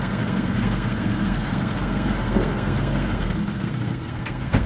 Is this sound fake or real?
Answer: fake